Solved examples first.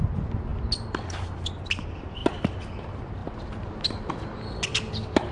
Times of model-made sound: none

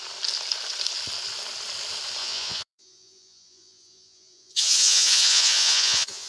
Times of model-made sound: 2.2-6.3 (vocoder, Vocos)